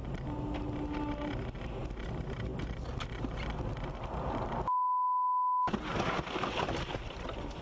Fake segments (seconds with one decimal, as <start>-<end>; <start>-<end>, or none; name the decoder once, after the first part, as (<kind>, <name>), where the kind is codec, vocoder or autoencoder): none